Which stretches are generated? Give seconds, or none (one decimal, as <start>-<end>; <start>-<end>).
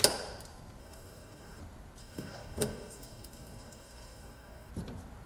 0.8-1.6; 2.0-4.7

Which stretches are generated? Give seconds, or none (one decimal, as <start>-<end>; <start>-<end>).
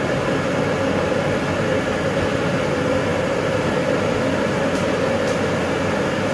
none